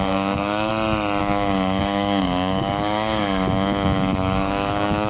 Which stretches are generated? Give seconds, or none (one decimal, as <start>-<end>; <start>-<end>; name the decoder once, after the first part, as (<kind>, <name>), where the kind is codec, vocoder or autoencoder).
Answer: 0.0-0.7 (codec, DAC); 1.2-5.1